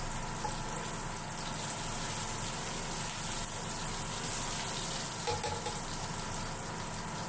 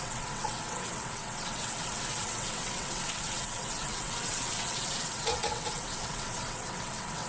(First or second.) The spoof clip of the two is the second